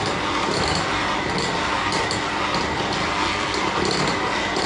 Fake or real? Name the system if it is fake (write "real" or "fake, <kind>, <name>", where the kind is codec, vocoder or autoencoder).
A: real